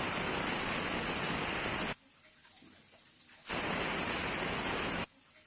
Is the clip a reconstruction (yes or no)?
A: no